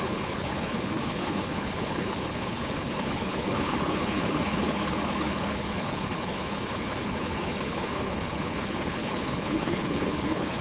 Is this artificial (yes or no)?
yes